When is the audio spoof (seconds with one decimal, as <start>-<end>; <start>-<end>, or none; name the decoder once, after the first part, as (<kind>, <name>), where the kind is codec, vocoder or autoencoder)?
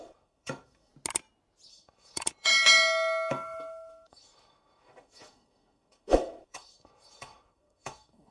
0.0-0.9 (autoencoder, DAC-VAE); 1.7-2.5; 3.3-8.3